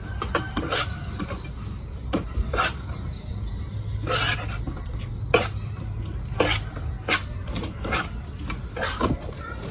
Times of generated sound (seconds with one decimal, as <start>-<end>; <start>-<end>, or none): none